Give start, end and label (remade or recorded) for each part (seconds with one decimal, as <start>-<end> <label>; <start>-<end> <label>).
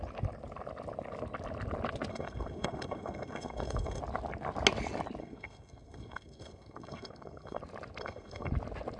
0.0-2.1 recorded; 2.1-4.0 remade; 4.0-5.2 recorded; 5.2-7.6 remade; 7.6-8.0 recorded; 8.0-8.5 remade; 8.5-9.0 recorded